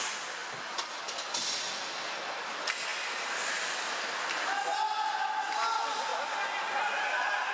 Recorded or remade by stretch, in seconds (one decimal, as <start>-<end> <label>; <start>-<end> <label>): 0.0-2.9 recorded; 2.9-3.5 remade; 3.5-7.5 recorded